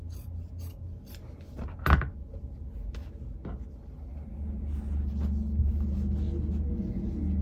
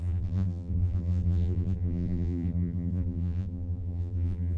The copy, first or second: second